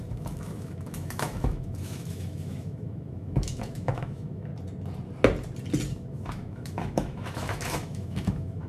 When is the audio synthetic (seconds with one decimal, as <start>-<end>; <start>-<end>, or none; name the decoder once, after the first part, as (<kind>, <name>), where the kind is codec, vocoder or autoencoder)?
0.0-4.5 (autoencoder, DAC-VAE); 5.9-8.7